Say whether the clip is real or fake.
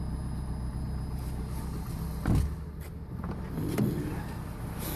real